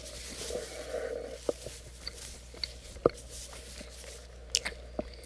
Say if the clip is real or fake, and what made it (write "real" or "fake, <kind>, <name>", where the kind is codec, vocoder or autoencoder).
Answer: real